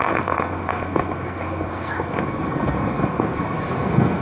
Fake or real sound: fake